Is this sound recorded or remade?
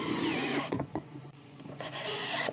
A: remade